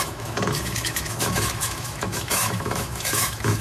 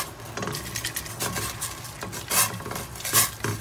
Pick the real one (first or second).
second